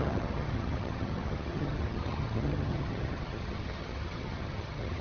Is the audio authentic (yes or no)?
no